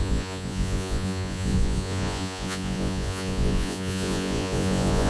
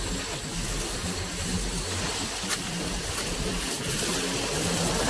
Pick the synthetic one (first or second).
first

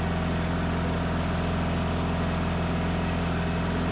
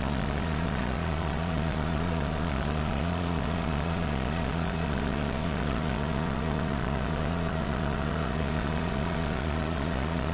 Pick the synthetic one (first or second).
second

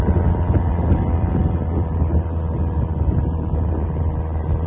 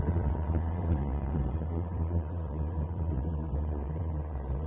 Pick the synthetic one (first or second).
second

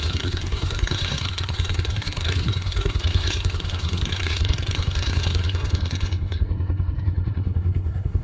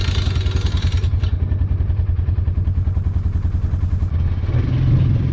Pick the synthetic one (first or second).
first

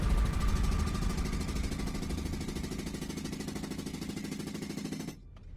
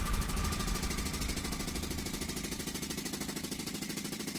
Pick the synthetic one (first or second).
second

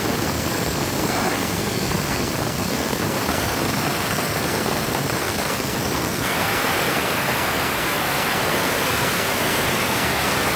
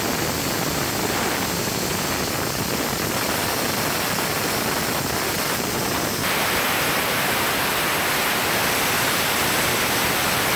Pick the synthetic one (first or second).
first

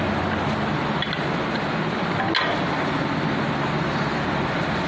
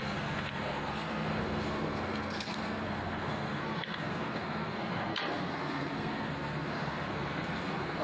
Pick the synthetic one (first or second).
second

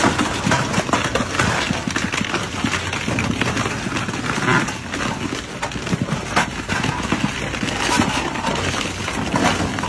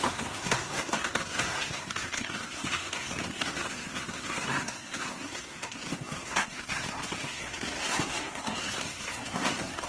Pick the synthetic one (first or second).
second